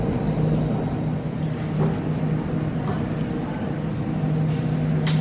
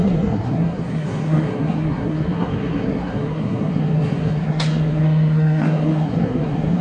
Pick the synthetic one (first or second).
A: second